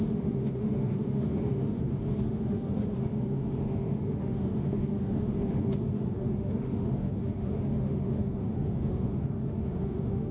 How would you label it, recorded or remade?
remade